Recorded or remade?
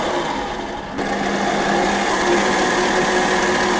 recorded